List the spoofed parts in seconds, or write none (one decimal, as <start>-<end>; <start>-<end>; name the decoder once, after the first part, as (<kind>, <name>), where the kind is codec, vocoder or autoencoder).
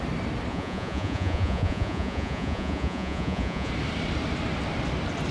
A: 0.5-3.7 (vocoder, Vocos)